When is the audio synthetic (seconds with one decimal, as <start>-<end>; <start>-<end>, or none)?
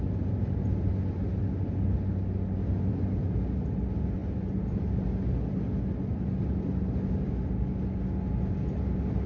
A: none